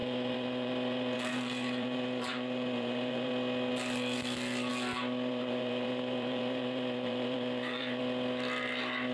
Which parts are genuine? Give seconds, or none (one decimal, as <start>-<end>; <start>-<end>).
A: 3.3-5.3; 8.0-9.1

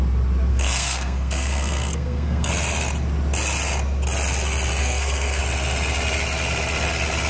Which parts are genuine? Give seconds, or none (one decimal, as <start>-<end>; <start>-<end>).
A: 0.0-0.5; 2.5-4.8; 5.4-7.3

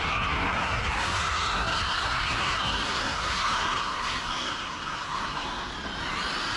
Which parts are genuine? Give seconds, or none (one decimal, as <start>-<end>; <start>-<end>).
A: 5.7-6.6

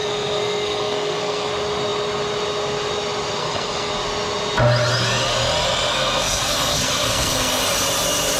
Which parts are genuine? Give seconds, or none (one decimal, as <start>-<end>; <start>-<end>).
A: 1.5-3.4; 3.9-5.9; 7.6-8.4

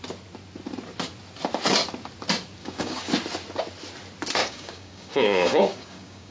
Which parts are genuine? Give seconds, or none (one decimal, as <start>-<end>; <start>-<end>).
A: 0.0-2.6; 3.1-4.4

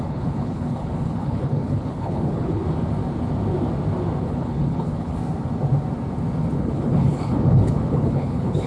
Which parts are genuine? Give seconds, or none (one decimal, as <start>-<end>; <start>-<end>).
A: 2.6-4.2; 5.2-6.6

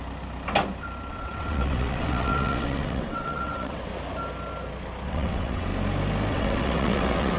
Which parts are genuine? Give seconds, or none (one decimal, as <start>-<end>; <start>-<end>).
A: 0.0-1.1; 3.9-5.1; 5.7-6.3